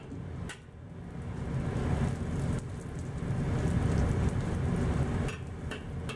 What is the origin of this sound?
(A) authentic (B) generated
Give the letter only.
A